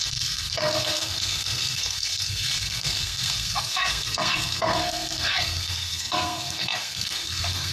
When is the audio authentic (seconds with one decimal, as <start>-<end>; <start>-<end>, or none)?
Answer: none